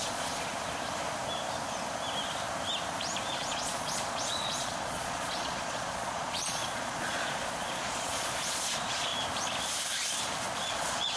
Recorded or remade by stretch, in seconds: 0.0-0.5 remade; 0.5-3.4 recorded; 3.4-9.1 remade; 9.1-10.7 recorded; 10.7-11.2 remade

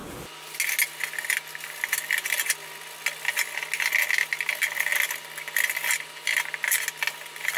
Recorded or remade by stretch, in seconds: 0.0-7.6 recorded

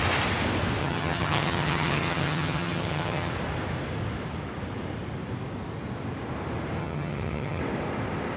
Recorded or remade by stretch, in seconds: 0.0-0.8 recorded; 0.8-3.3 remade; 3.3-6.8 recorded; 6.8-7.6 remade; 7.6-8.4 recorded